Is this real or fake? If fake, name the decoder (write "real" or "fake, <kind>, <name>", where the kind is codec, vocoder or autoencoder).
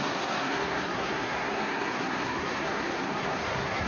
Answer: fake, codec, SNAC